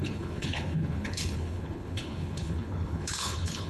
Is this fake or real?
fake